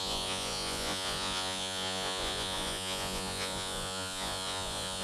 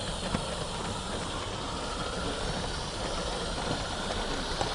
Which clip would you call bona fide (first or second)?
second